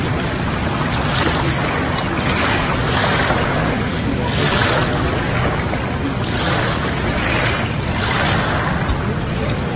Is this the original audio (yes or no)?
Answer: yes